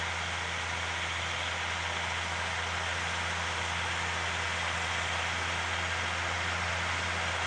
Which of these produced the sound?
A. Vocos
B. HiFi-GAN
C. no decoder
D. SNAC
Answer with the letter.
C